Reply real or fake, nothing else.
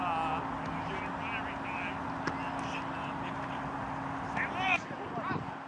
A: real